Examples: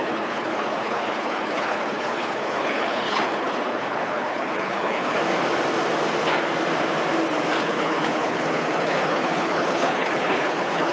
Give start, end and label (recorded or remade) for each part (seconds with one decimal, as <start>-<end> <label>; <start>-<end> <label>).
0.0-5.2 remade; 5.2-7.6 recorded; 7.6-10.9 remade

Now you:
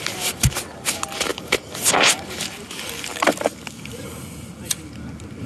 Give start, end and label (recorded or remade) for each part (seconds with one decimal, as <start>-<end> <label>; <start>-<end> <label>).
0.0-5.5 recorded

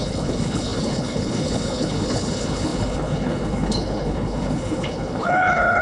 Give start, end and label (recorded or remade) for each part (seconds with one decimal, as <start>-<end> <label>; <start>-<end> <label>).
0.0-5.8 remade